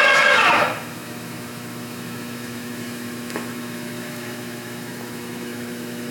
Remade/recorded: remade